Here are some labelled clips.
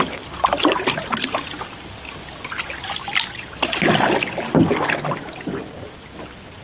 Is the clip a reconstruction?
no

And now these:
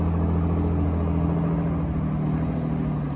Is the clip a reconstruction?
no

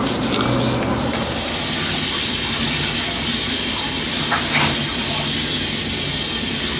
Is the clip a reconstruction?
no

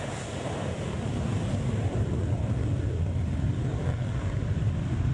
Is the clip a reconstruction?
no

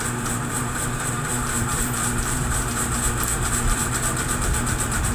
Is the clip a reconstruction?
yes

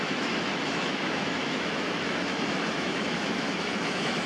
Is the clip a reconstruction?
yes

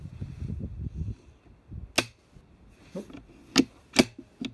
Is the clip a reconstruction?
no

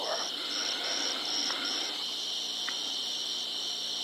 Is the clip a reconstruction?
no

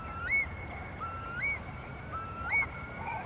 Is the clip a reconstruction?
yes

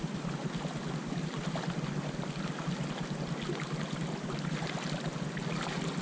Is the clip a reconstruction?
no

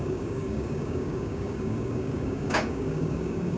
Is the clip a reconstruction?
yes